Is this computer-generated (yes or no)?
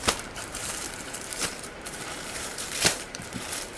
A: yes